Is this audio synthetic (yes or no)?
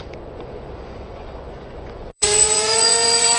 yes